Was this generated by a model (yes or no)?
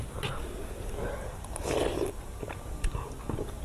no